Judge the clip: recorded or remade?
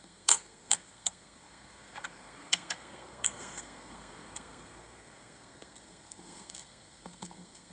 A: remade